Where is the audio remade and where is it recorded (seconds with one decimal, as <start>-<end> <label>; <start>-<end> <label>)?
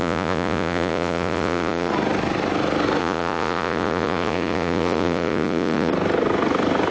0.0-1.9 remade; 1.9-3.0 recorded; 3.0-5.9 remade; 5.9-6.9 recorded